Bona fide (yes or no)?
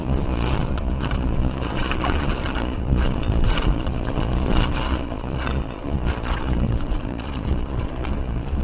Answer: no